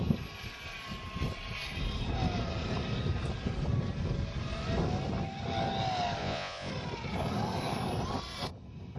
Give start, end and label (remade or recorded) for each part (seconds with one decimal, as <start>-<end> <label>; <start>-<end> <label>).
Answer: 0.0-6.2 recorded; 6.2-6.7 remade; 6.7-9.0 recorded